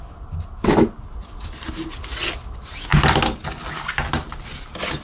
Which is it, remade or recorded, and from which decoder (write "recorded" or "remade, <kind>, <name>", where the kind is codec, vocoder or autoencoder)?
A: recorded